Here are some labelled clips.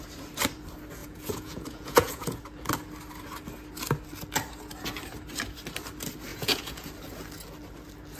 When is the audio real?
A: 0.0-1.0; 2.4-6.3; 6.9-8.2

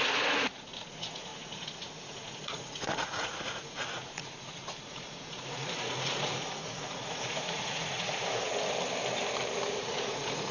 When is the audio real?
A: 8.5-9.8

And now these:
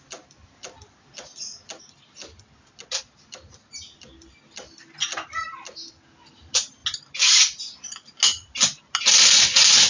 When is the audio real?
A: 0.0-9.9